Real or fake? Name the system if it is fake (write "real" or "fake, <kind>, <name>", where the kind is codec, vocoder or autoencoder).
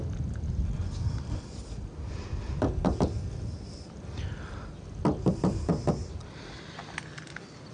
real